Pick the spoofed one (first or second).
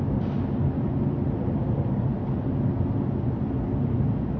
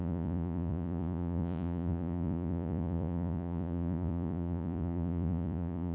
second